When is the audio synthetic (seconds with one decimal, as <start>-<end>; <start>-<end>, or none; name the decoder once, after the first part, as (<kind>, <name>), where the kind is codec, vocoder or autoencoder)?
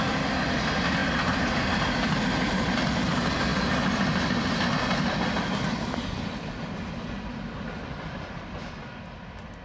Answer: none